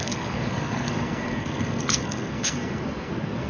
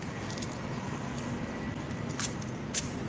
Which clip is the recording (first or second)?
second